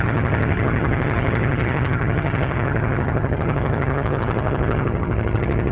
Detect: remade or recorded remade